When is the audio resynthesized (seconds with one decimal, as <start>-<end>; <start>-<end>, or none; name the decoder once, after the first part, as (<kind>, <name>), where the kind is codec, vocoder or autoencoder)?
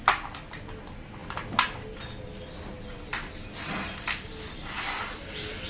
none